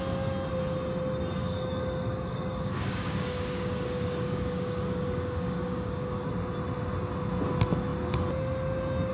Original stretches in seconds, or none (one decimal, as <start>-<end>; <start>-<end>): 0.0-1.4; 6.3-9.1